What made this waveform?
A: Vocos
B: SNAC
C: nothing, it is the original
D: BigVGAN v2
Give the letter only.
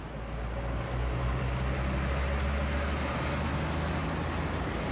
C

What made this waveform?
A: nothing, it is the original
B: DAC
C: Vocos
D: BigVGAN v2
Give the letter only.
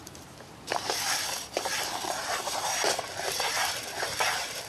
D